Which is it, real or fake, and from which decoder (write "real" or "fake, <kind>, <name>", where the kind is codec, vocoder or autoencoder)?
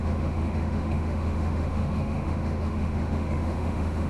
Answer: fake, autoencoder, DAC-VAE